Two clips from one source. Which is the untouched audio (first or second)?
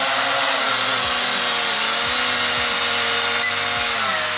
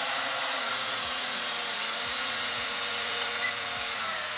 first